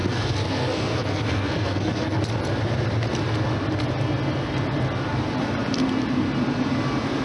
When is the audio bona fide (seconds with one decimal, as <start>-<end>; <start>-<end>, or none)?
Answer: 2.2-7.2

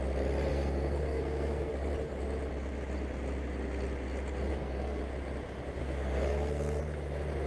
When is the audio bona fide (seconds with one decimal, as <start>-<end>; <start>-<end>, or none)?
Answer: 0.0-0.5; 1.7-4.5; 5.0-5.8; 6.8-7.5

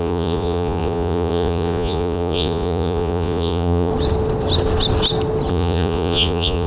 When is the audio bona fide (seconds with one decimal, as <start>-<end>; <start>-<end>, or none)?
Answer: 3.9-5.5

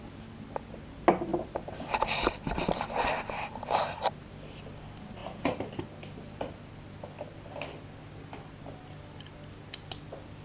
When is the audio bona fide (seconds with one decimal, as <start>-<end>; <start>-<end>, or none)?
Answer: 0.0-1.3; 4.3-10.4